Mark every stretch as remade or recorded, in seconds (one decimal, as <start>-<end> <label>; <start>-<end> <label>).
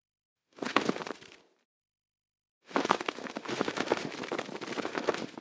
0.0-1.0 remade; 1.0-1.8 recorded; 1.8-4.1 remade; 4.1-4.8 recorded; 4.8-5.4 remade